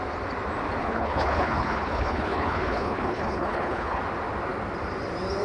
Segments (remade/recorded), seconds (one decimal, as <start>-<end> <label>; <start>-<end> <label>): 0.0-0.8 recorded; 0.8-4.0 remade; 4.0-5.4 recorded